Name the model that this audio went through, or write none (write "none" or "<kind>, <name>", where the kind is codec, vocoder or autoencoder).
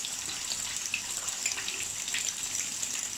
none